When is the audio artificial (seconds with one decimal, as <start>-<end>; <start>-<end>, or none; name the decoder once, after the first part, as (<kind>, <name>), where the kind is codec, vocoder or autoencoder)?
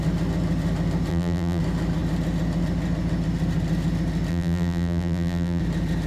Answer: 1.1-1.6 (vocoder, BigVGAN v2); 4.3-5.6